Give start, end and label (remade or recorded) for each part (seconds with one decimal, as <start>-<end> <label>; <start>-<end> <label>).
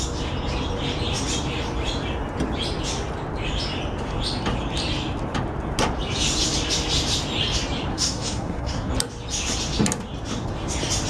0.0-7.9 recorded; 7.9-8.9 remade; 8.9-11.1 recorded